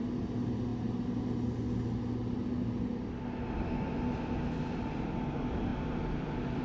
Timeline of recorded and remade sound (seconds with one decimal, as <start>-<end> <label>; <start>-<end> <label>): 0.0-6.6 recorded